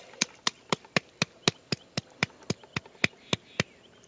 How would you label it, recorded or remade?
recorded